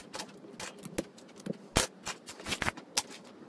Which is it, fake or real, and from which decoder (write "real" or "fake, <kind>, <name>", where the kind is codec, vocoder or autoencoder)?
real